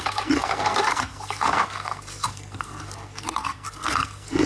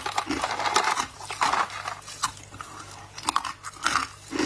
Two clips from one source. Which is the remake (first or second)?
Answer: first